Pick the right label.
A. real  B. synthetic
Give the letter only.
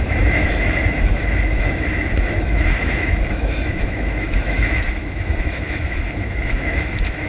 B